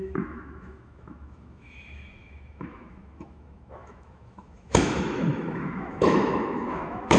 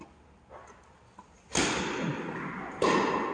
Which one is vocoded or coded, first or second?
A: first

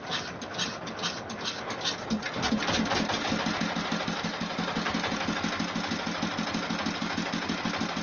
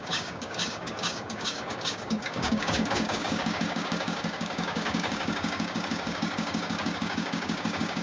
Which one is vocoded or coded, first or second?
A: second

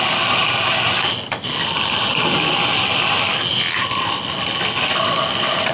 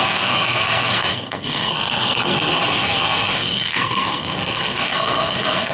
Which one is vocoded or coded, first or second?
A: second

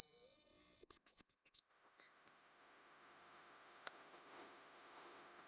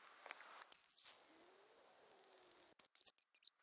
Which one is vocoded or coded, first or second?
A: first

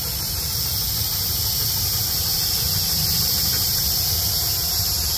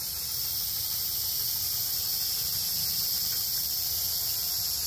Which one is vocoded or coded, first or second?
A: first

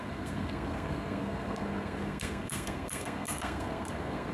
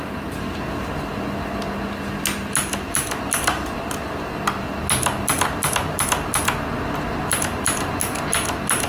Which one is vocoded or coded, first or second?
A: first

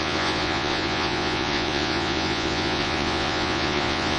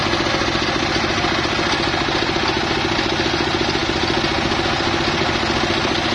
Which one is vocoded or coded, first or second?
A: first